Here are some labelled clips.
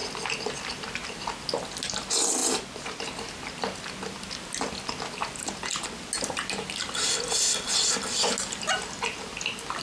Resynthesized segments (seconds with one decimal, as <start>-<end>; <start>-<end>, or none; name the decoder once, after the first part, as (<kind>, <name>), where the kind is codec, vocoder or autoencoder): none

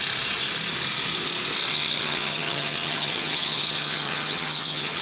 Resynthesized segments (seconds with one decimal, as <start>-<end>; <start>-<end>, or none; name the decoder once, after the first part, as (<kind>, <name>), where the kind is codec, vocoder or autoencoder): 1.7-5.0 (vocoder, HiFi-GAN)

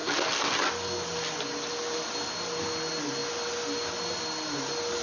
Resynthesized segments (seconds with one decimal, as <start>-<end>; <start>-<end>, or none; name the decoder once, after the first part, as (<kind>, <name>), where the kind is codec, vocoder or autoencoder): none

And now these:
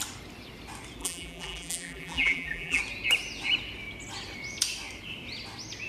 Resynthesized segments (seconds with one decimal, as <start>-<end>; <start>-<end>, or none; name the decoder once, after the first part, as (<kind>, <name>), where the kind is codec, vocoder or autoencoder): 1.0-2.8 (vocoder, BigVGAN v2)

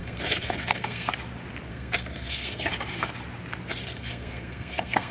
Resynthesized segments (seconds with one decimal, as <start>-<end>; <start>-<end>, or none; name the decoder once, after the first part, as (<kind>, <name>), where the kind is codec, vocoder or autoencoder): 0.0-1.1 (codec, SNAC); 1.7-2.7; 3.8-5.1

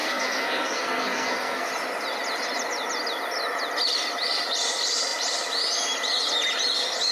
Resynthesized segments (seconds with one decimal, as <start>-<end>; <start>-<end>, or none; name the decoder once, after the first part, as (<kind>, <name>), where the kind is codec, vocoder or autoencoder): 0.0-1.7 (codec, SNAC)